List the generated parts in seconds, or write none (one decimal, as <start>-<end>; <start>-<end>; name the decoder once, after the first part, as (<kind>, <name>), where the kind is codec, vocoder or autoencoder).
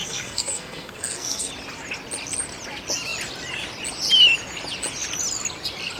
0.0-1.5 (codec, SNAC)